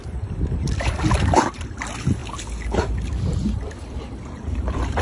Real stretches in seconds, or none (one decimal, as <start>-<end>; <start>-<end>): 2.2-3.6